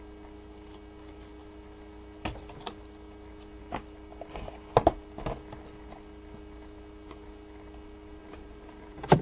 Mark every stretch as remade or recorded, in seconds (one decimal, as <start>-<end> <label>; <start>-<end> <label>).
0.0-8.2 recorded; 8.2-9.2 remade